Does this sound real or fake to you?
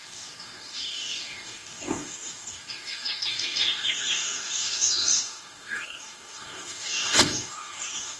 fake